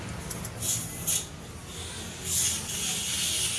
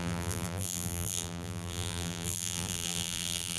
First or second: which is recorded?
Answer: first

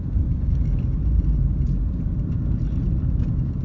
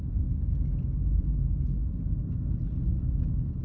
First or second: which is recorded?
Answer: second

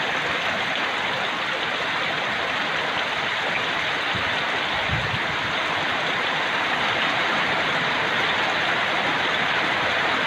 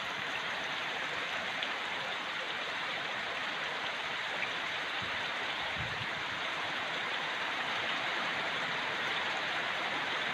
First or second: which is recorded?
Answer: first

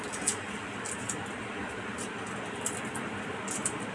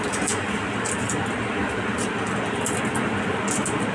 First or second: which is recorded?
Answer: second